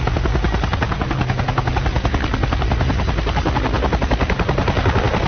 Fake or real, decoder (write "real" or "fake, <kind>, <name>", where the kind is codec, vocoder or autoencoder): real